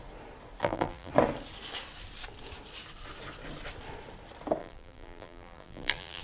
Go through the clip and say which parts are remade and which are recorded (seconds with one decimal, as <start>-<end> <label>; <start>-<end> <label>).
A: 0.0-0.6 recorded; 0.6-1.1 remade; 1.1-4.6 recorded; 4.6-6.2 remade